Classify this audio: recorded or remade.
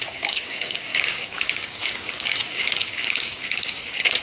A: remade